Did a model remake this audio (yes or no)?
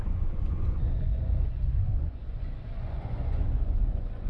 yes